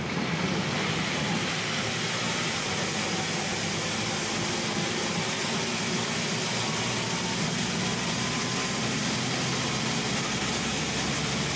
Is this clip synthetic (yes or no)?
no